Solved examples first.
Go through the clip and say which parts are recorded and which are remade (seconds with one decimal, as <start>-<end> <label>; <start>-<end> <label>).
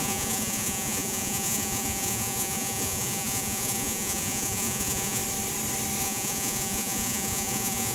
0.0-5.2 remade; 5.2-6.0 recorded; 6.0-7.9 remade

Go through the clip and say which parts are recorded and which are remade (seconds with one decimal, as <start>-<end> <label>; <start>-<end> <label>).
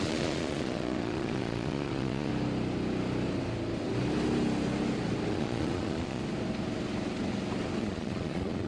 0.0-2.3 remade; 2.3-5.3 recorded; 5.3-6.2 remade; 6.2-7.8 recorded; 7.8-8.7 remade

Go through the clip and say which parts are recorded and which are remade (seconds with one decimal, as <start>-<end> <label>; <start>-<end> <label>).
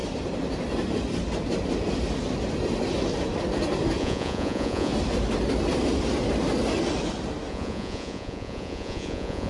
0.0-4.0 recorded; 4.0-4.9 remade; 4.9-7.5 recorded; 7.5-9.5 remade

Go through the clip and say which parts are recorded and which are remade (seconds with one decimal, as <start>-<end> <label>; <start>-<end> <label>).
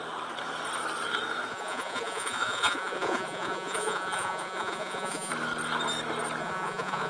0.0-1.5 recorded; 1.5-5.3 remade; 5.3-6.4 recorded; 6.4-7.1 remade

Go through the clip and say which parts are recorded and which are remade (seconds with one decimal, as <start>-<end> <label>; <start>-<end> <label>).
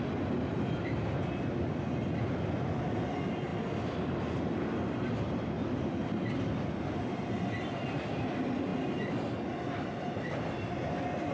0.0-11.3 recorded